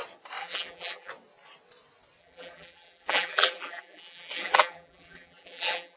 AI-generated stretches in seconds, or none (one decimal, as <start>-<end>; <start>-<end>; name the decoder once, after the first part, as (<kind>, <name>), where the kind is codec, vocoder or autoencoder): 0.4-1.1 (vocoder, BigVGAN v2); 2.2-6.0